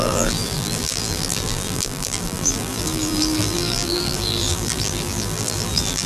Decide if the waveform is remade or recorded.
remade